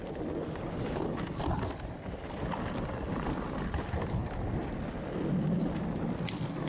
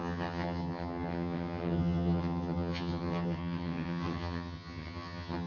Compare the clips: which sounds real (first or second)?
first